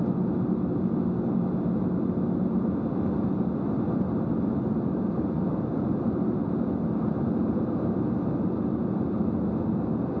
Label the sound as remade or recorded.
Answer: recorded